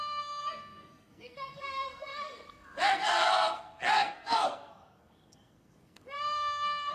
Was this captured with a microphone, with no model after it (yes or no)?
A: no